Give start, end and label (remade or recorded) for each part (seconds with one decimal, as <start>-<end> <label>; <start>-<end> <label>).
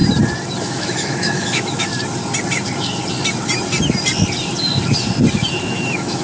0.0-0.6 recorded; 0.6-1.9 remade; 1.9-5.6 recorded; 5.6-6.2 remade